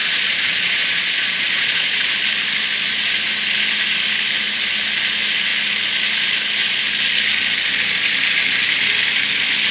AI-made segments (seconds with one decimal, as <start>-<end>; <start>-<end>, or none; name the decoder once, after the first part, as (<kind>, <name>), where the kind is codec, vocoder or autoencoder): 0.0-2.1 (vocoder, Vocos)

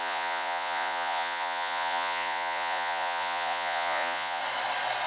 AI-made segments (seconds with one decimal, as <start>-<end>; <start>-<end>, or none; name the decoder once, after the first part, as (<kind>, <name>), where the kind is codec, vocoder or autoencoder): 0.0-4.4 (vocoder, Vocos)

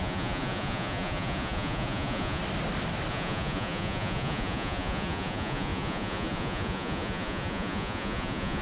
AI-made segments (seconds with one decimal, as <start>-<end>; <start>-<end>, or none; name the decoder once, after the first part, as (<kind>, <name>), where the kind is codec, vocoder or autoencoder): 0.0-2.4 (vocoder, Vocos); 3.1-8.6

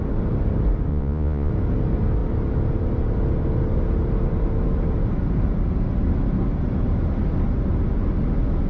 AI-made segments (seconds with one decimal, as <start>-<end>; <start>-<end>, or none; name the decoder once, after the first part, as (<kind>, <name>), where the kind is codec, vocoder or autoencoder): 0.9-1.5 (vocoder, Vocos)

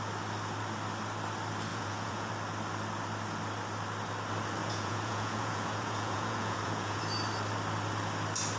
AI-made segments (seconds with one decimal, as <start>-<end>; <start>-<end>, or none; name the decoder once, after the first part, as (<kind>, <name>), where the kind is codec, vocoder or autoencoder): 1.7-2.3 (vocoder, Vocos); 4.6-7.0

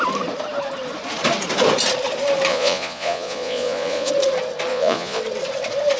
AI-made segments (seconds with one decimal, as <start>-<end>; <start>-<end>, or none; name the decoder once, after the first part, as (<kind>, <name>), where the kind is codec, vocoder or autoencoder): 2.5-4.1 (vocoder, Vocos); 4.7-5.2